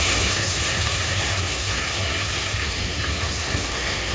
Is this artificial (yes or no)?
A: yes